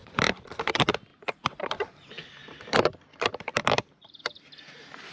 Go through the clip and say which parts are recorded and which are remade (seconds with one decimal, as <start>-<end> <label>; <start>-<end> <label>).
0.0-0.7 remade; 0.7-1.1 recorded; 1.1-1.7 remade; 1.7-2.4 recorded; 2.4-4.2 remade; 4.2-5.1 recorded